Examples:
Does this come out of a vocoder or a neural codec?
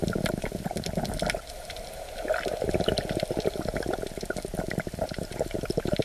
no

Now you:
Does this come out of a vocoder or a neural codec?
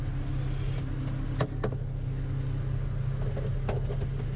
no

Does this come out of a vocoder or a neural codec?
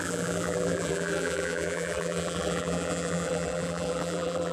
yes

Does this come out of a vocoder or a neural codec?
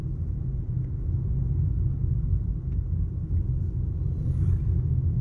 no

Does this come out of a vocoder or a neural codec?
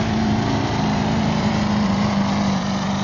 yes